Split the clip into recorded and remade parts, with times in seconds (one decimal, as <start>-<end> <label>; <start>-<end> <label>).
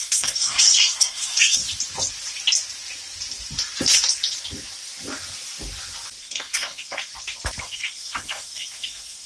0.0-1.6 remade; 1.6-6.2 recorded; 6.2-7.1 remade; 7.1-7.6 recorded; 7.6-9.3 remade